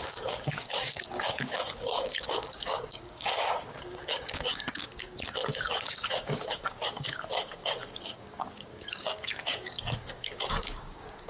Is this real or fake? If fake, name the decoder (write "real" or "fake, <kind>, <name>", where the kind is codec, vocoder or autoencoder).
fake, codec, DAC